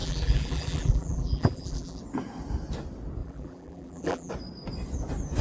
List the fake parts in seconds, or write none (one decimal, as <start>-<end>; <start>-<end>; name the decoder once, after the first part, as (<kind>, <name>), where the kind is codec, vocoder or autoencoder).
0.0-2.0 (vocoder, BigVGAN v2); 3.2-4.3